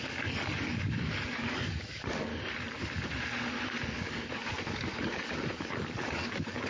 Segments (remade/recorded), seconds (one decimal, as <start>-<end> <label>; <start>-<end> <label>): 0.0-2.3 remade; 2.3-3.9 recorded; 3.9-6.7 remade